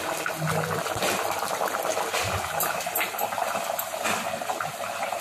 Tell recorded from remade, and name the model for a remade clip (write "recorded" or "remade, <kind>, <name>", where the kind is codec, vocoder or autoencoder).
recorded